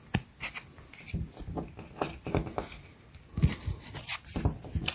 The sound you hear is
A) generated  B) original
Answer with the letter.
B